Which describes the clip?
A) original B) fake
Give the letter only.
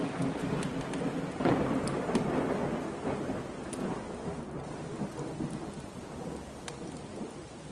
A